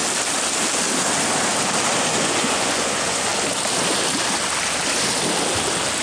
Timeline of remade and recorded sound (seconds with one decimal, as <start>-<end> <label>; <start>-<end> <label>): 0.0-2.0 recorded; 2.0-3.3 remade; 3.3-6.0 recorded